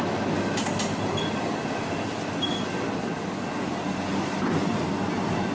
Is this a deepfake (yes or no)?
no